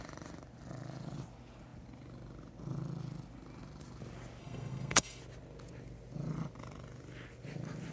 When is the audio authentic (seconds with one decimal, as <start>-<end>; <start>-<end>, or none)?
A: 0.0-4.4; 5.2-7.9